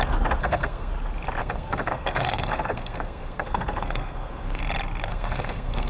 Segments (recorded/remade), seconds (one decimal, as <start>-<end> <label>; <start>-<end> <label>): 0.0-0.4 recorded; 0.4-0.9 remade; 0.9-1.4 recorded; 1.4-4.6 remade; 4.6-5.1 recorded; 5.1-5.9 remade